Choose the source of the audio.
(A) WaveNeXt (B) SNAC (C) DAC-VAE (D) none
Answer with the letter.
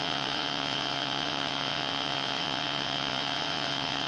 A